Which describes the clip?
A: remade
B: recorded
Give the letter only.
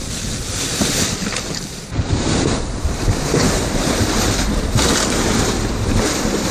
A